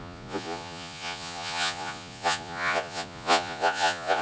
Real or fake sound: fake